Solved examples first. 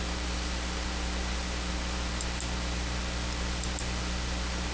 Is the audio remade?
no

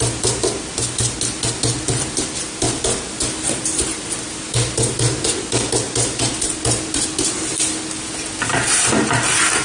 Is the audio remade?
no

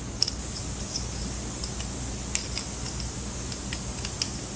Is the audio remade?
no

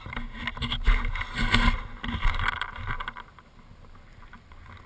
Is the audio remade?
no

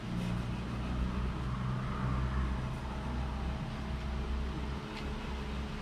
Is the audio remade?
no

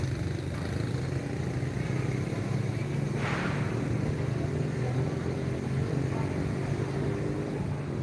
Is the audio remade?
no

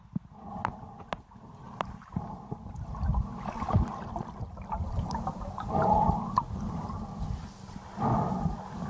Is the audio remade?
no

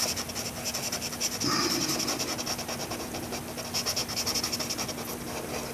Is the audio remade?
no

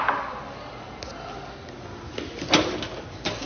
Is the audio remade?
no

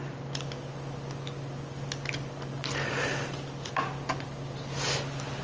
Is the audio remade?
no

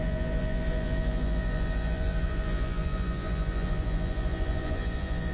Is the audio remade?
yes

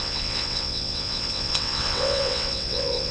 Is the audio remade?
yes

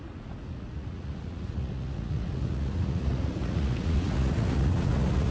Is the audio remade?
yes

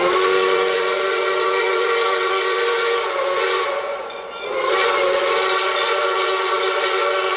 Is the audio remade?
yes